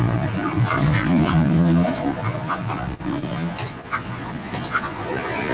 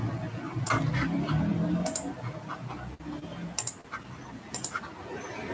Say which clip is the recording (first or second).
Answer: second